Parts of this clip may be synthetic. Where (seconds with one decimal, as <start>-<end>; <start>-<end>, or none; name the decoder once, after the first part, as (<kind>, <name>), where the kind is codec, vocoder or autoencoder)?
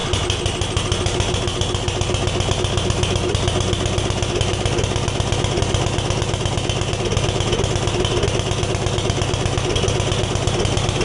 none